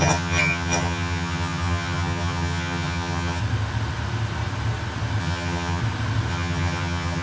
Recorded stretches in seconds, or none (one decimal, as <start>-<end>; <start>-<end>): 3.4-5.2; 5.8-6.3